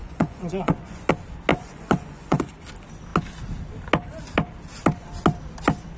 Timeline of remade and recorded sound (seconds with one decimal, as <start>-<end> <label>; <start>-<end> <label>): 0.0-1.1 remade; 1.1-1.5 recorded; 1.5-2.5 remade; 2.5-6.0 recorded